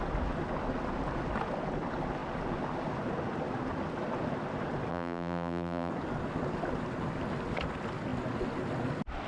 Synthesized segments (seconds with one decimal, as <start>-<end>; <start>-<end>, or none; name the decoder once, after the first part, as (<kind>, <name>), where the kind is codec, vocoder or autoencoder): 4.9-5.9 (vocoder, BigVGAN v2)